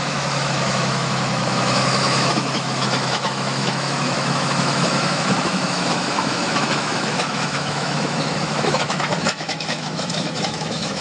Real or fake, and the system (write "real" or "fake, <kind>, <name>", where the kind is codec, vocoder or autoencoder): fake, autoencoder, DAC-VAE